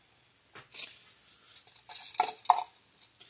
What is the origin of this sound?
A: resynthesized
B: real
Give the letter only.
B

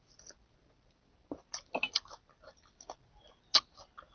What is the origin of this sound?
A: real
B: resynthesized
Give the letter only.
A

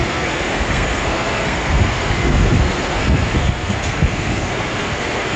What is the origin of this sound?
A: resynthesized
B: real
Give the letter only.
A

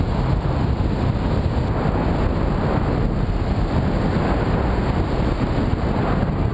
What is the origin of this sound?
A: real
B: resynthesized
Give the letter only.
A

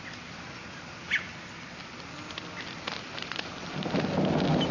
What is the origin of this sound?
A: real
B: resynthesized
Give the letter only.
A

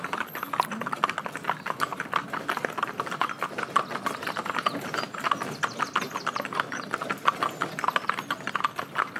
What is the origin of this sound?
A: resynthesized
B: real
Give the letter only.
B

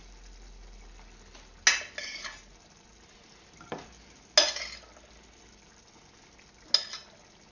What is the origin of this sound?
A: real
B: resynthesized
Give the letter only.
A